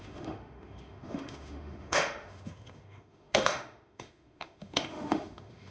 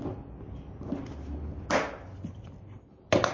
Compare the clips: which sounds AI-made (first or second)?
first